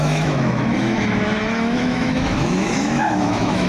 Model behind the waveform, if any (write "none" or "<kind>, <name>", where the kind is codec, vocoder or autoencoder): autoencoder, DAC-VAE